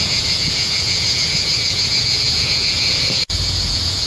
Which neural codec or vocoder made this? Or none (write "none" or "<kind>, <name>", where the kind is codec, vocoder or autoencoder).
vocoder, Vocos